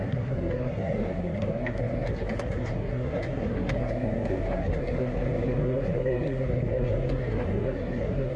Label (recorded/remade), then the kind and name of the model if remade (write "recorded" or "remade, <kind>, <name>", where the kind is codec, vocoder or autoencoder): remade, codec, SNAC